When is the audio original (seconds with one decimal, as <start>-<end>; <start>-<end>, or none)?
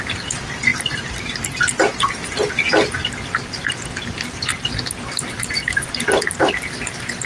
0.0-7.3